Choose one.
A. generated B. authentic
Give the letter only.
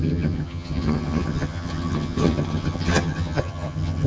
A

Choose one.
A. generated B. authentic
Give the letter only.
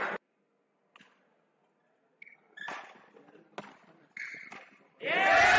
B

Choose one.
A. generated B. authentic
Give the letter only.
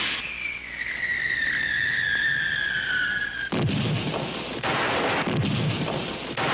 B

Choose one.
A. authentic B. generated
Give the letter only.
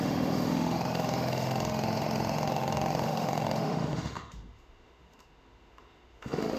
B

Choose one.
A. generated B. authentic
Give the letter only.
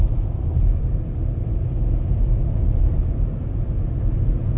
B